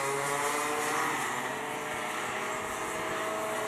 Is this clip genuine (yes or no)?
yes